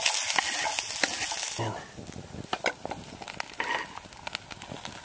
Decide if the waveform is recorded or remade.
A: recorded